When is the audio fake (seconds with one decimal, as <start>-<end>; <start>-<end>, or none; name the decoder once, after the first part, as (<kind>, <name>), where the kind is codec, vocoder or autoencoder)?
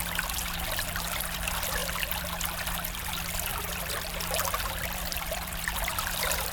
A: 3.5-6.5 (vocoder, BigVGAN v2)